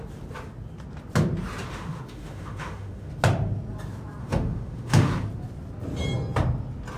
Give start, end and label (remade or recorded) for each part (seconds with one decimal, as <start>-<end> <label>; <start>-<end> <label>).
0.0-1.7 recorded; 1.7-3.1 remade; 3.1-4.2 recorded; 4.2-5.1 remade; 5.1-7.0 recorded